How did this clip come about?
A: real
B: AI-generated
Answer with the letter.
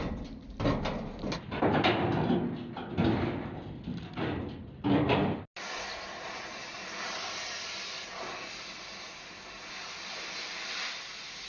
A